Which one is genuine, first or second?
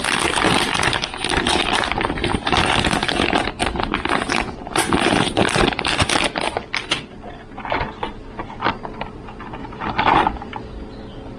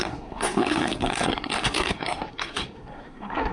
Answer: first